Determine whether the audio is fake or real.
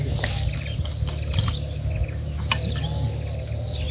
real